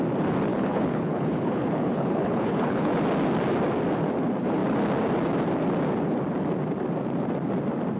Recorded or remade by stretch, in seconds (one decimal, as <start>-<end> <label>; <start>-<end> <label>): 0.0-0.5 recorded; 0.5-2.9 remade; 2.9-8.0 recorded